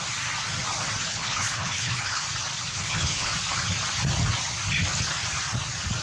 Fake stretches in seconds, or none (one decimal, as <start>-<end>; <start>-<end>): 1.1-2.3; 2.7-3.3